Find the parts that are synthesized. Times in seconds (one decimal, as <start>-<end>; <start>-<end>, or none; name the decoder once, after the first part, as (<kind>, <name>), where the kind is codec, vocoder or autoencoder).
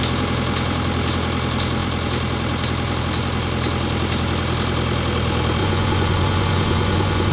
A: 5.6-7.3 (vocoder, Vocos)